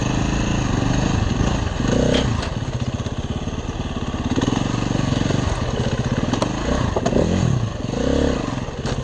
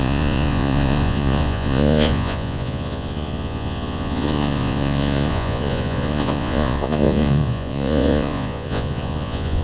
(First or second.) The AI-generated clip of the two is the second